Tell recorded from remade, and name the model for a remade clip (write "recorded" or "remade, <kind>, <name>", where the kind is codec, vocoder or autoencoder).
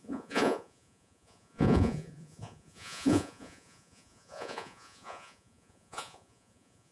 remade, vocoder, Vocos